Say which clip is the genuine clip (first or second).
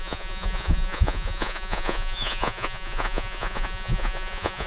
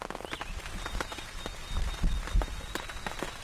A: second